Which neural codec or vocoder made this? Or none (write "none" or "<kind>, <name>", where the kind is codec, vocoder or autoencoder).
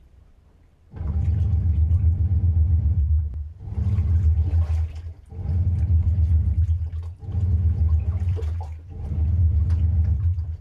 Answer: vocoder, BigVGAN v2